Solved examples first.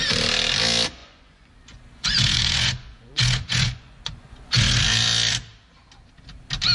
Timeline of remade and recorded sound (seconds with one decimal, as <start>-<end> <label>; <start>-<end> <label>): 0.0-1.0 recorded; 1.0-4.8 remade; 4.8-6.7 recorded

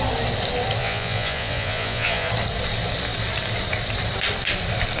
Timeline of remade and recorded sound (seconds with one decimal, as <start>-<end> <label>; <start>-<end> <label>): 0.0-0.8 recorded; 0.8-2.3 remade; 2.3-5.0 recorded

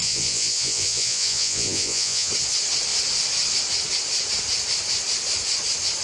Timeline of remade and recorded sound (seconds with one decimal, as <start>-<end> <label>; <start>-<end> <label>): 0.0-2.3 remade; 2.3-6.0 recorded